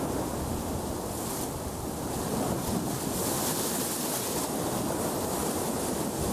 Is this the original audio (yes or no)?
yes